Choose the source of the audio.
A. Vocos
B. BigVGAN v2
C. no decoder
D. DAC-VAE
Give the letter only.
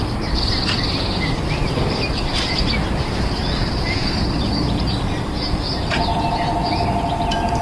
B